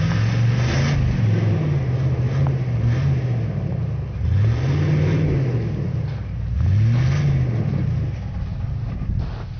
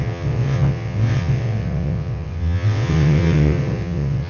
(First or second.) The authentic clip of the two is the first